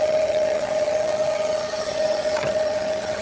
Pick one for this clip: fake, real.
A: fake